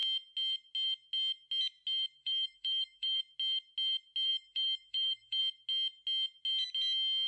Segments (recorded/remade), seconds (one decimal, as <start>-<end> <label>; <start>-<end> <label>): 0.0-2.2 recorded; 2.2-3.2 remade; 3.2-4.3 recorded; 4.3-5.4 remade; 5.4-7.3 recorded